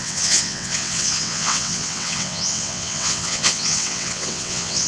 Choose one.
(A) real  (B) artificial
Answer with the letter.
B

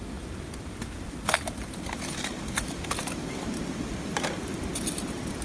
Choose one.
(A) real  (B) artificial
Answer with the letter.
B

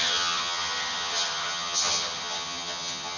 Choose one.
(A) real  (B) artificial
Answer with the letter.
B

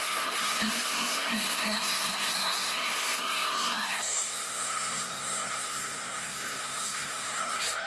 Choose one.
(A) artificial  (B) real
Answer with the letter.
A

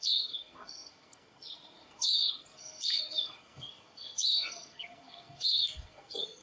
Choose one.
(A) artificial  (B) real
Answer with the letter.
A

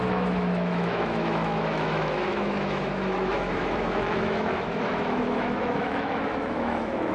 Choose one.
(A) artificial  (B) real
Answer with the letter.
A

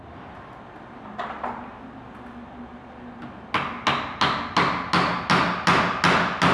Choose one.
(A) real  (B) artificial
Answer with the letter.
A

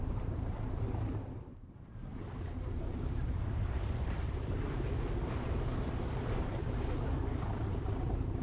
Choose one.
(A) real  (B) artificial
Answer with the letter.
B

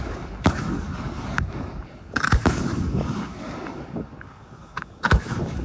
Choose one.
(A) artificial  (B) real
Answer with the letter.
A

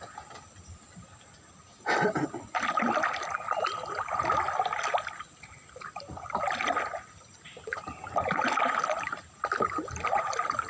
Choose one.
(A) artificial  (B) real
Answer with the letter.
B